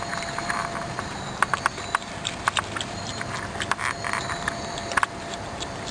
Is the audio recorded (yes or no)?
no